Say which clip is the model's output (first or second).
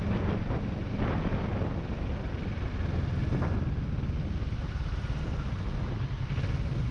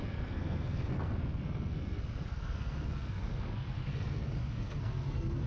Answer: second